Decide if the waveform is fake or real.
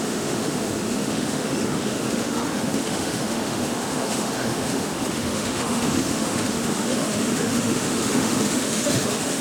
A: fake